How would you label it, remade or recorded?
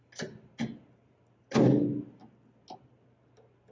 recorded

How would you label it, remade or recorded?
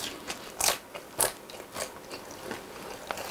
recorded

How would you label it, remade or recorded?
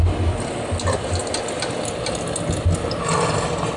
recorded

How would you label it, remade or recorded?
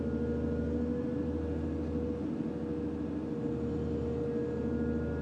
recorded